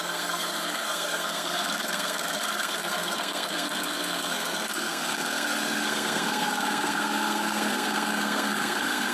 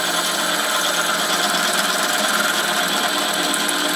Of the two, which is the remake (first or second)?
first